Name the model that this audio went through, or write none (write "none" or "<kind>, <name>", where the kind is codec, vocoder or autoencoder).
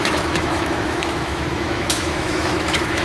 autoencoder, DAC-VAE